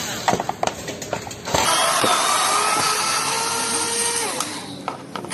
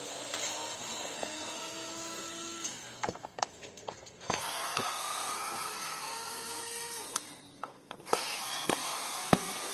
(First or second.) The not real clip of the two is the second